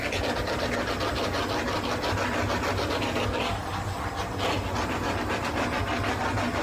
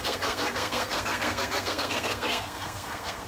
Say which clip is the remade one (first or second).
second